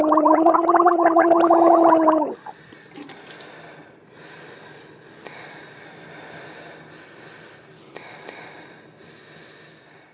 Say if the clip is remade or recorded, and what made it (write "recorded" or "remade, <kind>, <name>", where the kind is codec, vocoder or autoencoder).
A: recorded